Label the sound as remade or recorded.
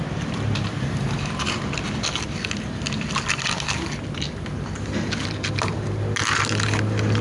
recorded